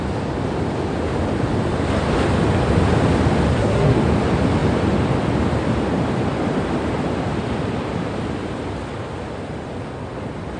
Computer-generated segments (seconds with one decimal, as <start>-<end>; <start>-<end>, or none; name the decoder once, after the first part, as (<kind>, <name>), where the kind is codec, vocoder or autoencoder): 3.5-4.0 (codec, SNAC)